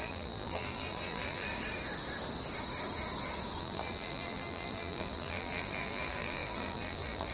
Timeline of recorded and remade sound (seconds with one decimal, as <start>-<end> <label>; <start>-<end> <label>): 0.0-1.5 remade; 1.5-3.6 recorded; 3.6-7.3 remade